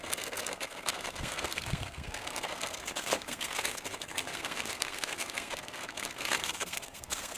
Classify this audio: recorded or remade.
remade